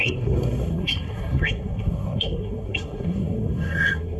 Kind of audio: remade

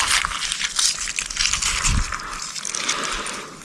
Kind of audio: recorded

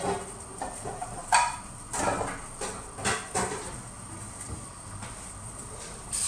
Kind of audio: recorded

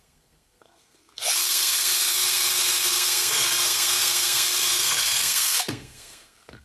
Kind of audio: remade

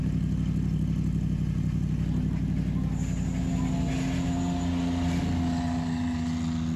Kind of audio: recorded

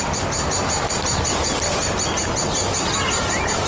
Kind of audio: recorded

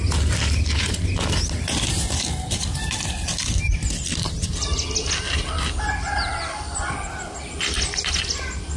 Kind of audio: recorded